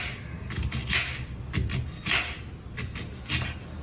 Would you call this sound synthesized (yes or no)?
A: no